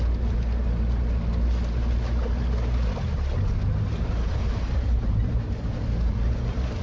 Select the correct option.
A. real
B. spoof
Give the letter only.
A